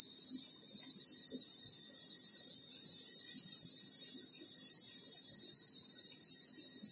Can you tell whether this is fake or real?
real